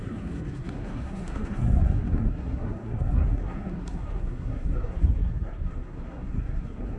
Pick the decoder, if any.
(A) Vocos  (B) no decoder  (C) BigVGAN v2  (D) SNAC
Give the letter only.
D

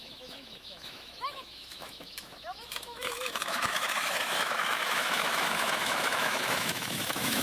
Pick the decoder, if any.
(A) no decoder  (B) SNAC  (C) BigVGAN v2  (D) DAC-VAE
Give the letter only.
D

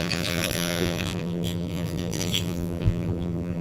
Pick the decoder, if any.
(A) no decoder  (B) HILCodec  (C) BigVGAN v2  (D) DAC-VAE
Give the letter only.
C